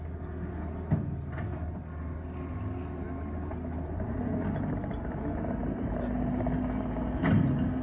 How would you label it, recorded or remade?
recorded